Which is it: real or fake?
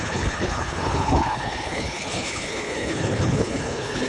fake